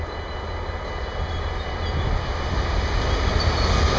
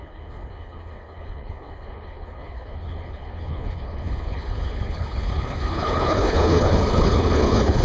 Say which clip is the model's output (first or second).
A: second